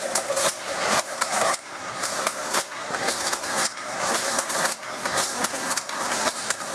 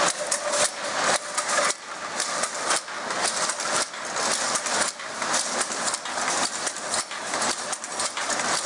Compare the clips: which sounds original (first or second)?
second